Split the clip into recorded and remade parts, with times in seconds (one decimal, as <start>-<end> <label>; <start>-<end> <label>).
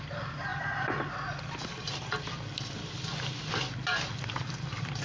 0.0-5.0 recorded